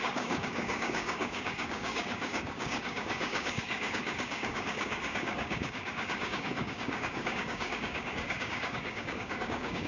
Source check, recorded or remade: remade